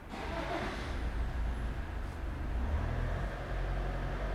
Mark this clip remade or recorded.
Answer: recorded